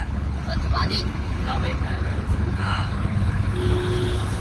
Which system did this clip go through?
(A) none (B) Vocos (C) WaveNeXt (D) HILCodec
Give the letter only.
D